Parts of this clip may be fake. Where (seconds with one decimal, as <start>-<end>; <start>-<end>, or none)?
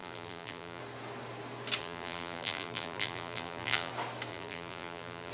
0.0-0.8; 1.8-3.9; 4.3-5.3